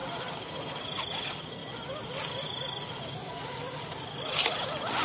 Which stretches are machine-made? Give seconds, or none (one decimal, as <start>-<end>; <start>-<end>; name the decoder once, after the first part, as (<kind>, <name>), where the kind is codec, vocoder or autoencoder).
none